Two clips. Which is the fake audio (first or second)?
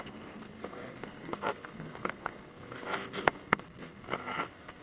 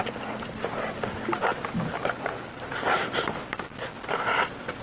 first